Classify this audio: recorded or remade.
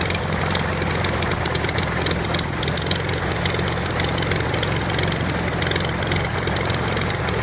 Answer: recorded